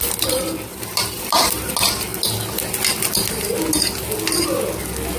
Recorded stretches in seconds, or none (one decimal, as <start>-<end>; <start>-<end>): 0.0-0.7; 1.7-5.2